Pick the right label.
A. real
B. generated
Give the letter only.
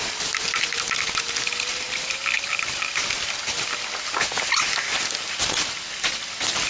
A